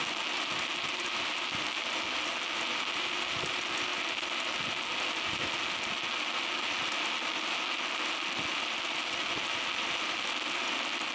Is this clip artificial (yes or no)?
no